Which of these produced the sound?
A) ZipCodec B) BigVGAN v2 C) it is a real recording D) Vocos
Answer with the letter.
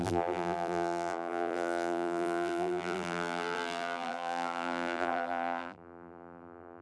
B